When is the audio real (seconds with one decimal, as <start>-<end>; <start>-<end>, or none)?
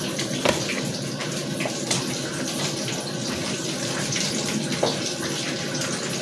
0.0-6.2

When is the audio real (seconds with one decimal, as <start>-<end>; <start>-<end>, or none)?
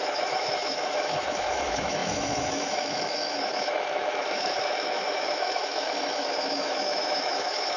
none